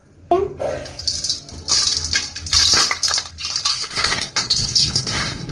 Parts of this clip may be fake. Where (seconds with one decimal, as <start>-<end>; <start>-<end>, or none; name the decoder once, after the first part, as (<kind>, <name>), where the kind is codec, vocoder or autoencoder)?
3.7-5.5 (codec, SNAC)

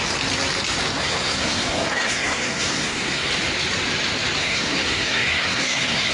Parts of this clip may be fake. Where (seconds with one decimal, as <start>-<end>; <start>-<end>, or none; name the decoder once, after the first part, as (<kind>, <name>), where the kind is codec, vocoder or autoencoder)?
1.0-3.3 (codec, SNAC); 4.4-6.1

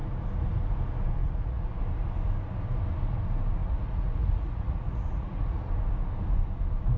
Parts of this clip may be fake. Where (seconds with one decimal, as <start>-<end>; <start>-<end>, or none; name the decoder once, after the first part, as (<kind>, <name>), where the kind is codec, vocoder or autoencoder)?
1.2-1.8 (vocoder, Vocos); 3.6-5.7

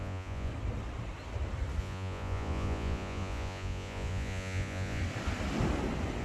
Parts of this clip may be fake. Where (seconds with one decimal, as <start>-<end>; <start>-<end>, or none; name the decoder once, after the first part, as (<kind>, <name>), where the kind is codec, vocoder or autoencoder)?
0.0-0.5 (vocoder, Vocos); 1.8-5.0

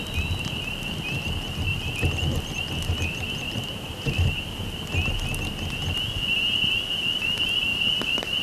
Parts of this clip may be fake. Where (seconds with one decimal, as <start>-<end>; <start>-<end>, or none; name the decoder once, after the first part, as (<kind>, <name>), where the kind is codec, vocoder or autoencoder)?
1.7-4.4 (vocoder, BigVGAN v2); 7.7-8.4

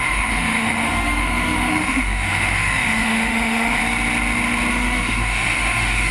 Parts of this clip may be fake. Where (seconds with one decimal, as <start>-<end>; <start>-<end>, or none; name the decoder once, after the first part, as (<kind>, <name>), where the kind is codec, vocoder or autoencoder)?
0.0-3.8 (autoencoder, DAC-VAE); 4.7-6.1

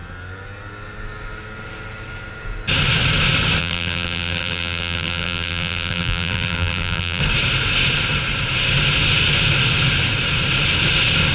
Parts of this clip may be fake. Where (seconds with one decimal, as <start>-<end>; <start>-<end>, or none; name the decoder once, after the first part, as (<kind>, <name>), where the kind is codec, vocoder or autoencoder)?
3.6-7.2 (vocoder, BigVGAN v2)

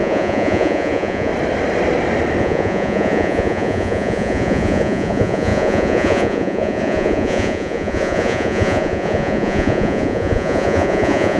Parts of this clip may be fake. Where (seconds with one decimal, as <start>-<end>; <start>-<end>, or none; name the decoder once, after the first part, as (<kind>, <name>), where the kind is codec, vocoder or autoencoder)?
0.0-1.3 (vocoder, Vocos); 2.4-11.4